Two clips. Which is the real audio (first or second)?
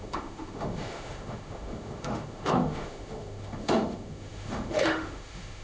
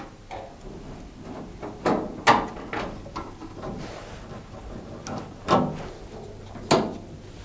second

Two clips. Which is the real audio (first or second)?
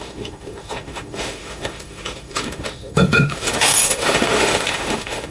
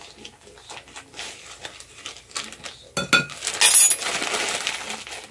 second